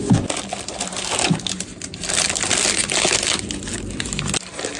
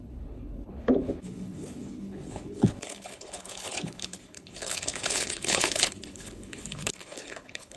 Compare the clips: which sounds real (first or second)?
first